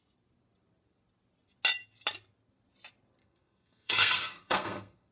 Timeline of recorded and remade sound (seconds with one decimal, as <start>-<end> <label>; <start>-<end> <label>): 0.0-3.2 recorded; 3.2-5.1 remade